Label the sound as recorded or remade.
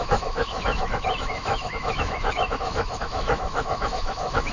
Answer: remade